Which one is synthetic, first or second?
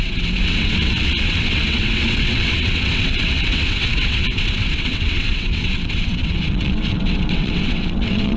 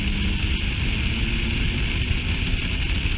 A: first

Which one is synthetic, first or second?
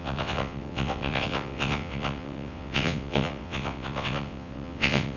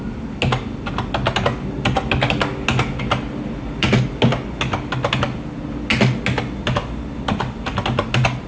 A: first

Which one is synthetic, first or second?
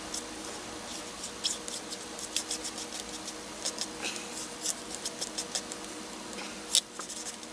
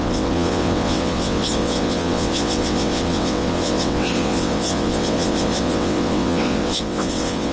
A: second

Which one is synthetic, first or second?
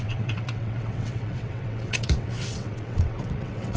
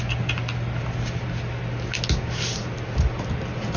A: first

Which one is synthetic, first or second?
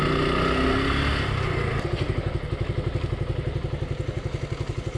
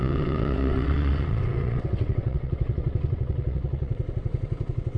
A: second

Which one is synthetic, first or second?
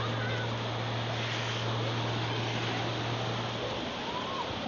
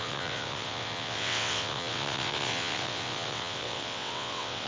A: second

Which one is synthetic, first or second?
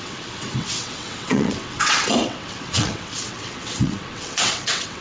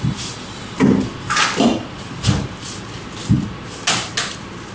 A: first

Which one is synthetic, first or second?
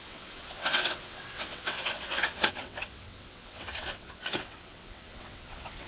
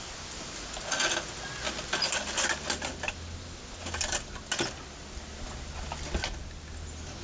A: first